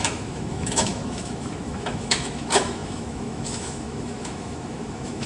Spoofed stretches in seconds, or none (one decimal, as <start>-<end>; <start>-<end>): 0.0-5.3